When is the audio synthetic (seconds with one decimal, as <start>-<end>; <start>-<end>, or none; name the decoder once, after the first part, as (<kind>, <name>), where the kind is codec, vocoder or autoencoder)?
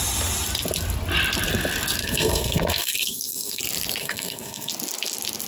2.0-3.6 (codec, SNAC); 4.0-4.7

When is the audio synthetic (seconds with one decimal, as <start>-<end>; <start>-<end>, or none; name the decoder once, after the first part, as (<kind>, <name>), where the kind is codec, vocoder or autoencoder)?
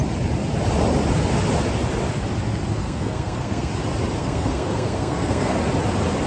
2.8-3.7 (codec, SNAC); 4.2-5.5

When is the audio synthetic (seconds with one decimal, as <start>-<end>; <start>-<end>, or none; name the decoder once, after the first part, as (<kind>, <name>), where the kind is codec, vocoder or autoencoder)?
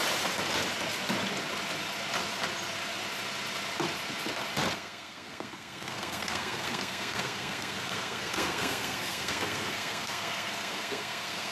4.7-11.5 (codec, SNAC)